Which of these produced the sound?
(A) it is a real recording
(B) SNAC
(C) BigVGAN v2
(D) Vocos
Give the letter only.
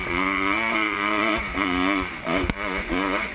D